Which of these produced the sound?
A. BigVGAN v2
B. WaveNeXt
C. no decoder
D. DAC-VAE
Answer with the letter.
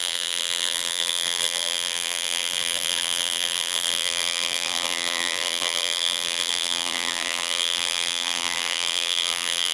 A